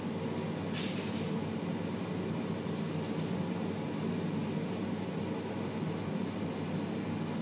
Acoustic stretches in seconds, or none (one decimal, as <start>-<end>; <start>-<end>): 0.0-7.4